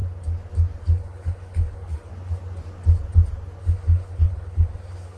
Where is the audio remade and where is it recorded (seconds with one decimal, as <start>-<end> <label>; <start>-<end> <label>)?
0.0-0.8 recorded; 0.8-2.1 remade; 2.1-3.6 recorded; 3.6-5.2 remade